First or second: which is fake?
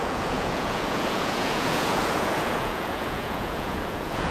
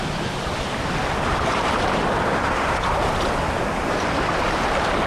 first